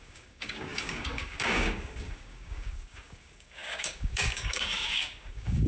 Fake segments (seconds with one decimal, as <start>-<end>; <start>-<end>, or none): 0.0-5.7